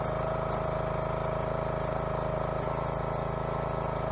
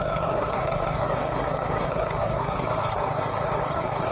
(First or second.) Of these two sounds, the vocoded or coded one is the second